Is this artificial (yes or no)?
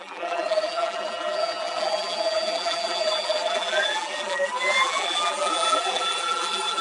yes